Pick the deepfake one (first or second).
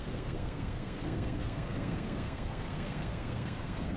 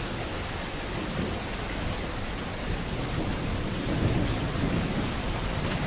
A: first